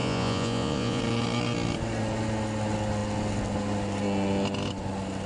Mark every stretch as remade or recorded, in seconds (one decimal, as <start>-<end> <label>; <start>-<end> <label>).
0.0-1.0 remade; 1.0-5.3 recorded